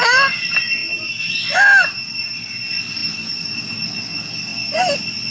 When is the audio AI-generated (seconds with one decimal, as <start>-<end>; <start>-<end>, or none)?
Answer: 3.0-3.8